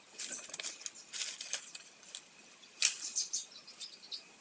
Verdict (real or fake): real